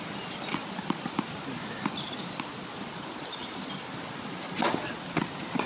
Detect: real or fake real